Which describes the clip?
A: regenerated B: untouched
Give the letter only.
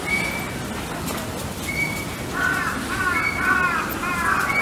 B